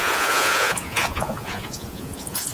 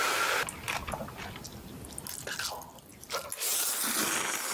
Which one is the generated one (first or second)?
first